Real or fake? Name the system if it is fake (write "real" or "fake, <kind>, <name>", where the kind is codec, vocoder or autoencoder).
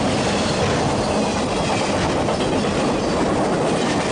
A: real